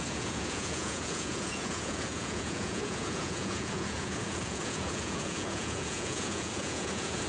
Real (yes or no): no